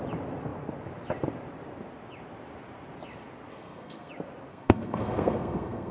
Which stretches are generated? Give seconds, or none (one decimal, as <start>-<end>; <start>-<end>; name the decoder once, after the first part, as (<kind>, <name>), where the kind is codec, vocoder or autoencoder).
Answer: 3.5-4.1 (codec, SNAC); 4.5-5.9